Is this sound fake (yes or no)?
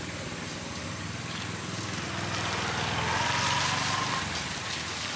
no